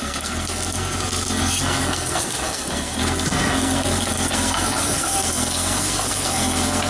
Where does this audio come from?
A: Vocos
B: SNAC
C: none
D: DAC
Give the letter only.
B